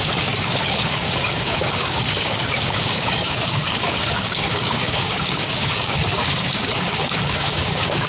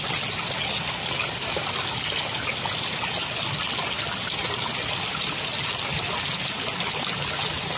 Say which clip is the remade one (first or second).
first